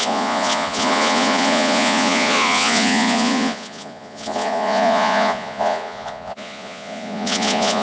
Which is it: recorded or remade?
remade